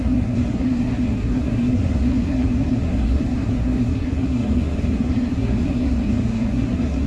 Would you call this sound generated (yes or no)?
yes